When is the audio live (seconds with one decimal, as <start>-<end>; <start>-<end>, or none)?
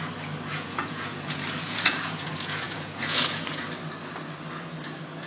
0.0-0.5; 3.7-5.3